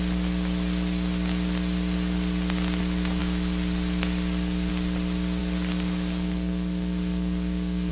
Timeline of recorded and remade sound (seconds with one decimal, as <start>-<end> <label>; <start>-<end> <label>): 0.0-5.4 recorded; 5.4-7.9 remade